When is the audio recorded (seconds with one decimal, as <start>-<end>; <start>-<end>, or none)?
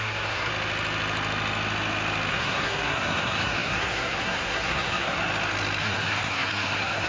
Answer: 0.5-2.3; 5.2-5.8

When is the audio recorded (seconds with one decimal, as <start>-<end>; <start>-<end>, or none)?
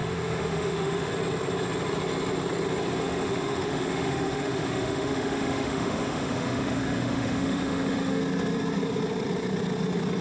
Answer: 1.1-3.0; 8.2-10.2